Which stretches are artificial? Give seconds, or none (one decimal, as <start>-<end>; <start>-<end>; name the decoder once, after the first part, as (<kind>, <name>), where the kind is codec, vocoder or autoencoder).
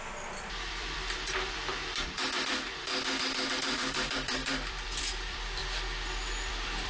0.0-2.9 (vocoder, BigVGAN v2); 3.5-5.6; 6.5-6.9